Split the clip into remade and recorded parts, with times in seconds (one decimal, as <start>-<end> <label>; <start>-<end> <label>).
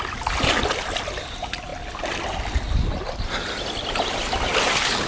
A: 0.0-5.1 recorded